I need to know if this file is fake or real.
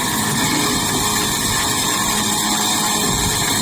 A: real